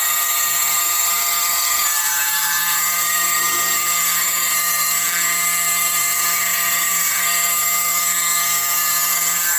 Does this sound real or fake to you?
fake